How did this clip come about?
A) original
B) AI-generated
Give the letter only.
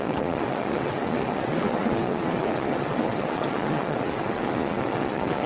B